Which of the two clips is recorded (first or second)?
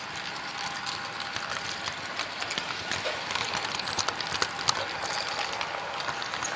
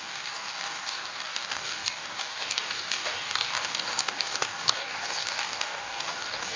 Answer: first